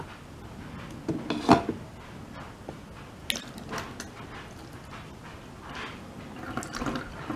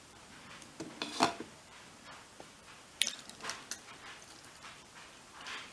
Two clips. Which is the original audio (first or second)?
first